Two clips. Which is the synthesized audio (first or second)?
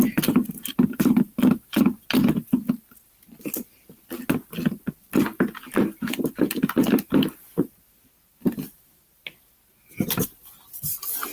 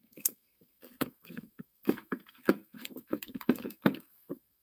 second